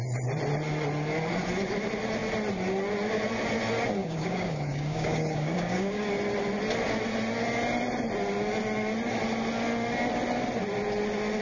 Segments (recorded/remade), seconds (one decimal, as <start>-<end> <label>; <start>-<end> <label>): 0.0-4.0 recorded; 4.0-6.1 remade; 6.1-11.4 recorded